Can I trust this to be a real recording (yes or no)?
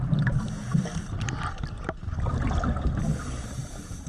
yes